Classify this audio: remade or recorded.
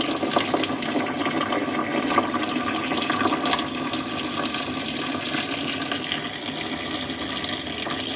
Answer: recorded